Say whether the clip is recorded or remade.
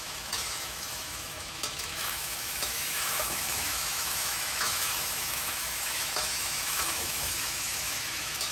remade